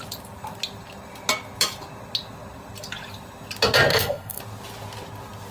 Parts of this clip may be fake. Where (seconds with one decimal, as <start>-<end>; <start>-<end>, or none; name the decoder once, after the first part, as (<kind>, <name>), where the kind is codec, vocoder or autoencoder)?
3.9-4.4 (codec, SNAC)